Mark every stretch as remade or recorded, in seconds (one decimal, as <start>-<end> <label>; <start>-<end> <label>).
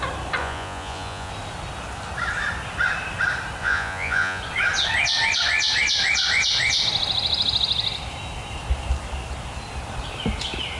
0.0-0.4 recorded; 0.4-1.3 remade; 1.3-3.6 recorded; 3.6-4.4 remade; 4.4-10.8 recorded